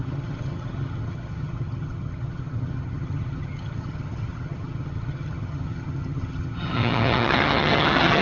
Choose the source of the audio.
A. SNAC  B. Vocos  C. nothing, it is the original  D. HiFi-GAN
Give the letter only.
D